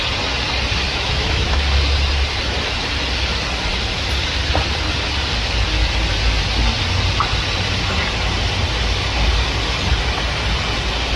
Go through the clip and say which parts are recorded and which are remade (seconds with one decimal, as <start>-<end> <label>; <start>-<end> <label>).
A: 0.0-0.9 recorded; 0.9-1.6 remade; 1.6-11.2 recorded